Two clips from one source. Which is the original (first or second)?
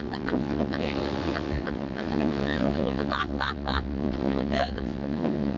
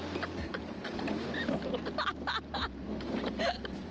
second